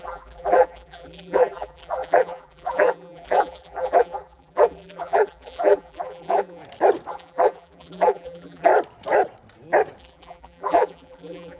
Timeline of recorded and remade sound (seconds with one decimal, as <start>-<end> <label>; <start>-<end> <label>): 0.0-6.6 remade; 6.6-7.1 recorded; 7.1-8.7 remade; 8.7-10.0 recorded; 10.0-11.6 remade